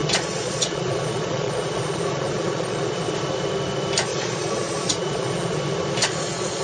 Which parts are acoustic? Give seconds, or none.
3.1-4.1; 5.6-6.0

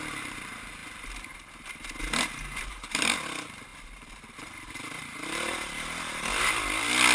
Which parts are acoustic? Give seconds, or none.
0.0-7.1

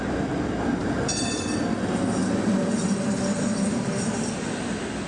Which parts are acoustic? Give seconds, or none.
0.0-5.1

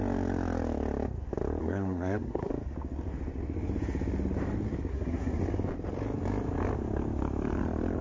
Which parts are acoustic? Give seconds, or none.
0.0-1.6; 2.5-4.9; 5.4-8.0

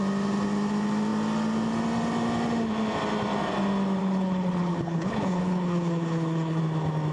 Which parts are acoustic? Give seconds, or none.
0.0-4.0; 6.6-7.1